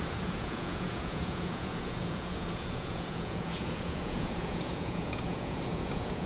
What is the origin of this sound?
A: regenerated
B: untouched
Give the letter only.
A